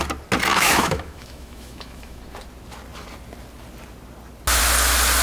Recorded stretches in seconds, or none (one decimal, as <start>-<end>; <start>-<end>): 0.0-0.5; 2.2-5.2